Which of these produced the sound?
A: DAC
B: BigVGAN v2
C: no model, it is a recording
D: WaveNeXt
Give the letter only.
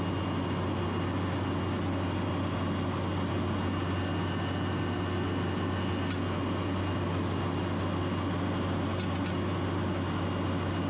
C